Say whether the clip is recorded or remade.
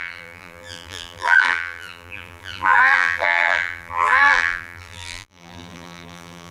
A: remade